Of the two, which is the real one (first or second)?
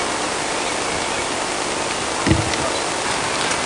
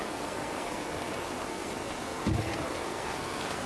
first